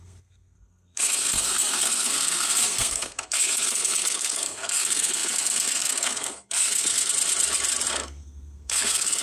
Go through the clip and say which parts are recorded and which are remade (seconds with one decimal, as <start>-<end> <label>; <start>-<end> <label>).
0.0-7.1 remade; 7.1-7.9 recorded; 7.9-9.2 remade